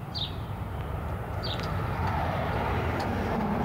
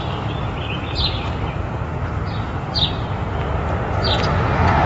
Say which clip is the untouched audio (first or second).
second